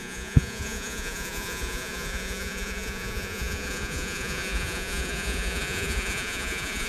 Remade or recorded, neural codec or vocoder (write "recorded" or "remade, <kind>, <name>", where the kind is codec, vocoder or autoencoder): remade, vocoder, Vocos